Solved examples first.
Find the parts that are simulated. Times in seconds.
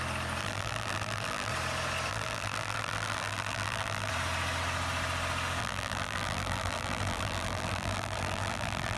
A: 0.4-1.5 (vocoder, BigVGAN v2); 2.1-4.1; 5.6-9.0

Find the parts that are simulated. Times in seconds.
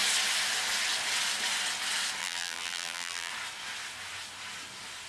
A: 2.2-3.3 (vocoder, BigVGAN v2)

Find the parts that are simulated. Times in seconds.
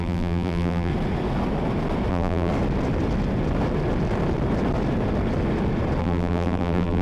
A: 0.0-0.9 (vocoder, BigVGAN v2); 2.1-2.5; 6.0-7.0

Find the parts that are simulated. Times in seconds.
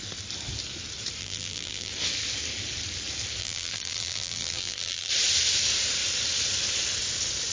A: 1.2-1.9 (vocoder, BigVGAN v2); 3.4-5.1